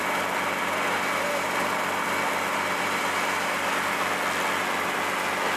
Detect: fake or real real